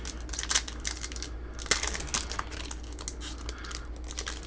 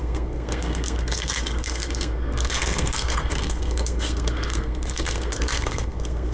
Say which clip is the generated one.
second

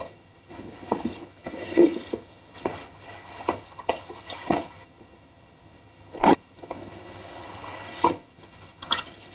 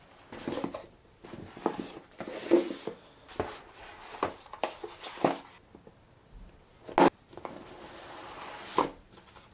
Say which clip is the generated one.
first